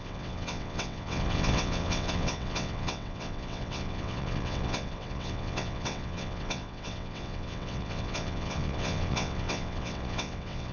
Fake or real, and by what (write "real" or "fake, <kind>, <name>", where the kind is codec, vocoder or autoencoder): fake, vocoder, WaveNeXt